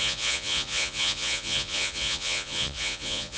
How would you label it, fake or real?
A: fake